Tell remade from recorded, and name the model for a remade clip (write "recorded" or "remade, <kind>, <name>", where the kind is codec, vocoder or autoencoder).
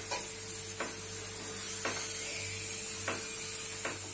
recorded